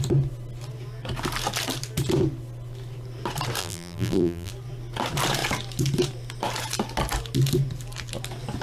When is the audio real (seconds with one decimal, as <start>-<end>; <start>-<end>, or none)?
0.0-3.6; 4.5-8.6